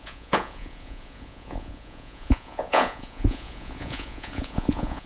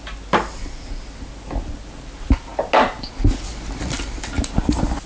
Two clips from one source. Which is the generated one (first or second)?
first